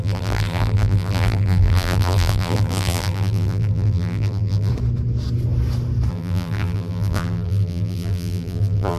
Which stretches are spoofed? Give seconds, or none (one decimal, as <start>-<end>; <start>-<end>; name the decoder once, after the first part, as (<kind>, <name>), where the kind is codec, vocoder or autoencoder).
0.0-4.7 (vocoder, BigVGAN v2); 6.1-9.0